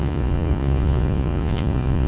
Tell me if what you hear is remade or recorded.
remade